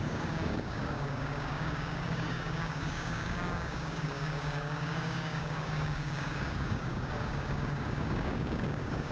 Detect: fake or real fake